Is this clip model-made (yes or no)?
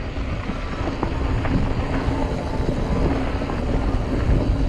no